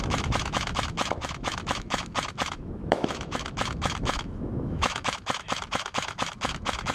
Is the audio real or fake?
fake